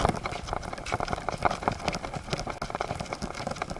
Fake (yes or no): no